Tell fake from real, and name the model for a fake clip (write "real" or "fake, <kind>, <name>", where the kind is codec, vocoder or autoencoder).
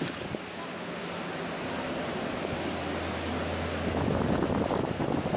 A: real